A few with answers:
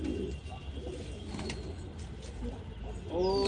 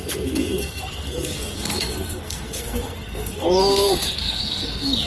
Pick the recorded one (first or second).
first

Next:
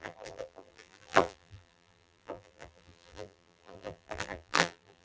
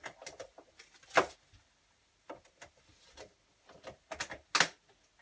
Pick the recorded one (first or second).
second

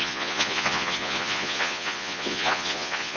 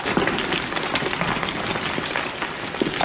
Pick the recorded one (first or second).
second